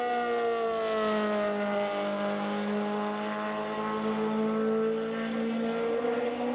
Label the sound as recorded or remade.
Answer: recorded